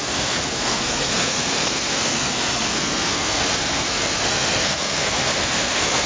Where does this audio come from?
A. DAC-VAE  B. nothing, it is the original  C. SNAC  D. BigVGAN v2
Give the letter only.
C